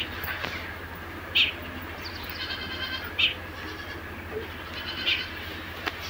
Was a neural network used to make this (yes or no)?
no